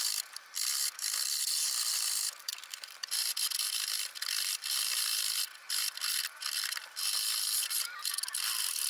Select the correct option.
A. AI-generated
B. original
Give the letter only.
A